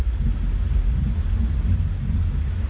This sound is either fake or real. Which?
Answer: real